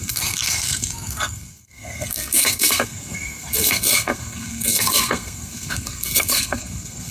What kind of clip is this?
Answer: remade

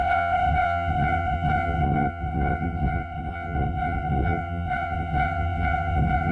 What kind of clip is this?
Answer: remade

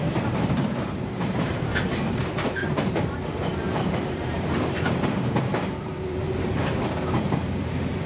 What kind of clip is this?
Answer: remade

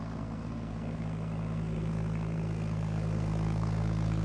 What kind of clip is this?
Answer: remade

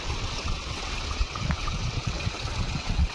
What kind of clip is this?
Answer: remade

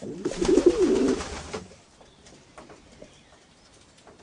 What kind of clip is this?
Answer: remade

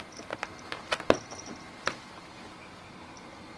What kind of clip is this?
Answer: recorded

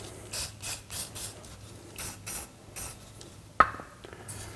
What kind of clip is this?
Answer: recorded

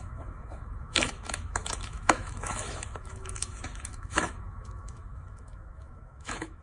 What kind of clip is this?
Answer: remade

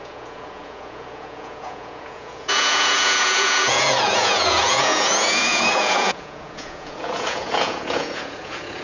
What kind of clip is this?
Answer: remade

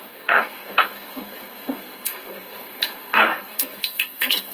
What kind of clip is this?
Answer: remade